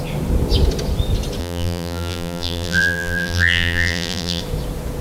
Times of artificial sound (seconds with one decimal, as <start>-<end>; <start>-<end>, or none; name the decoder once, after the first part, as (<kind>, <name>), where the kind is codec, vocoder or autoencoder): 1.4-4.4 (vocoder, BigVGAN v2)